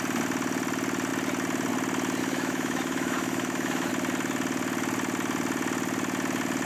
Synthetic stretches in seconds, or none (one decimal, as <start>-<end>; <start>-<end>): 2.2-3.9